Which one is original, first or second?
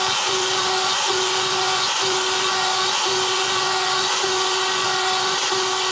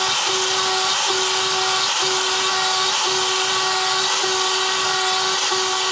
second